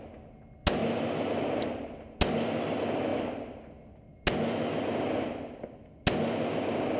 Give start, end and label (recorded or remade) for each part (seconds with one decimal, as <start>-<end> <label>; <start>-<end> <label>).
0.0-7.0 recorded

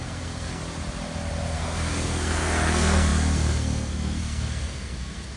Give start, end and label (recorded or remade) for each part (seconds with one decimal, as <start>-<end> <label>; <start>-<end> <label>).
0.0-0.6 remade; 0.6-1.5 recorded; 1.5-5.4 remade

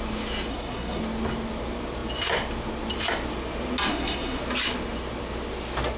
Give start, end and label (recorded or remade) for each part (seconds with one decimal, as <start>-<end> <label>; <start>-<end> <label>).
0.0-0.5 recorded; 0.5-1.0 remade; 1.0-3.9 recorded; 3.9-4.4 remade; 4.4-6.0 recorded

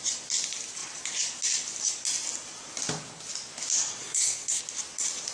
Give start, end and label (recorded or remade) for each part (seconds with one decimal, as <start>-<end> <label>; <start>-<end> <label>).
0.0-4.0 recorded; 4.0-4.6 remade; 4.6-5.3 recorded